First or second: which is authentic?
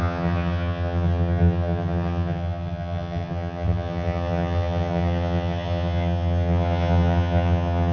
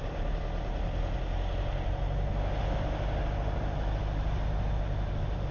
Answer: second